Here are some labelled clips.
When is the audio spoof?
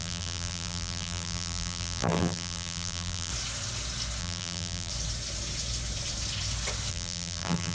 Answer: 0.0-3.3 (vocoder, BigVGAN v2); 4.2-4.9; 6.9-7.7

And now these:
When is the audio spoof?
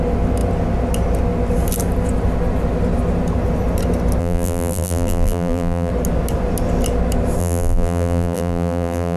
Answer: 4.2-5.9 (vocoder, BigVGAN v2); 7.4-9.2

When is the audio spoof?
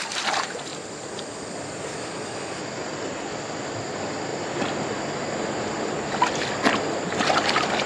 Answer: 3.3-3.9 (vocoder, BigVGAN v2)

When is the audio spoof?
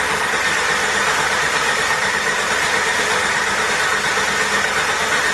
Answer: 0.8-3.7 (vocoder, BigVGAN v2)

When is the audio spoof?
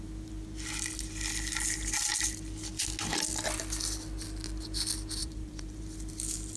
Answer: 5.2-5.8 (vocoder, BigVGAN v2)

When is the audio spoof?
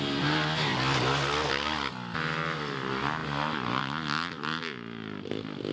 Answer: none